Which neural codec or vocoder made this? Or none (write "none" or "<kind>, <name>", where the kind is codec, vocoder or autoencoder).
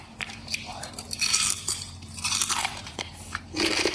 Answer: vocoder, BigVGAN v2